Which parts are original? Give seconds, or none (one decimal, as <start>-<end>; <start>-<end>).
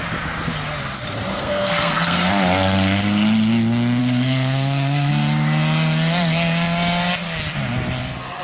0.0-1.3; 2.3-4.0; 5.1-8.4